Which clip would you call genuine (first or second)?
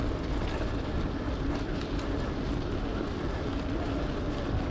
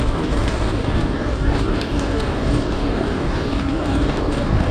first